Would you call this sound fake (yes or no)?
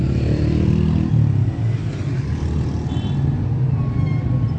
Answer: no